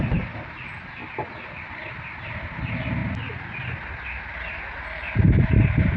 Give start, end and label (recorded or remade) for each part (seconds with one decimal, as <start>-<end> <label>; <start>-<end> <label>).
0.0-6.0 recorded

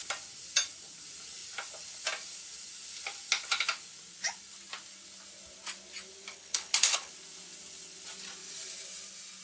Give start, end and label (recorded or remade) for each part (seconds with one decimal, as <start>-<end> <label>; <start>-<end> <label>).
0.0-6.3 recorded; 6.3-7.1 remade; 7.1-9.4 recorded

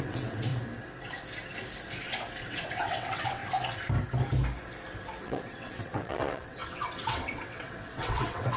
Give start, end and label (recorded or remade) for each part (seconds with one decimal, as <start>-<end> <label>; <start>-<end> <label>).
0.0-0.5 remade; 0.5-2.4 recorded; 2.4-3.4 remade; 3.4-5.2 recorded; 5.2-8.6 remade

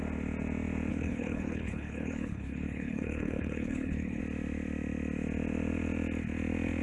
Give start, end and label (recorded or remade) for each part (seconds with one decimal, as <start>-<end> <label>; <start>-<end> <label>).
0.0-0.9 recorded; 0.9-4.2 remade; 4.2-6.8 recorded